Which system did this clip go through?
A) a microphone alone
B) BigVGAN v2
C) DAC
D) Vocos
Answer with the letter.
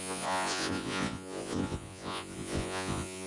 D